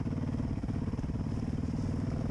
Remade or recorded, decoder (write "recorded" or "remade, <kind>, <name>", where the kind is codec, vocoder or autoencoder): recorded